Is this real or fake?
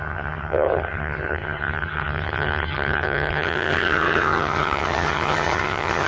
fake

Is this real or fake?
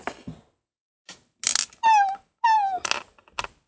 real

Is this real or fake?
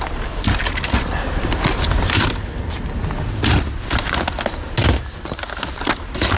real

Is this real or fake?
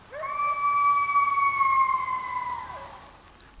real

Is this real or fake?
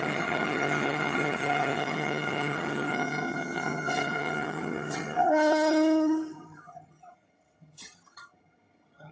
fake